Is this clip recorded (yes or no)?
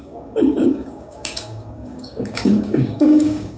no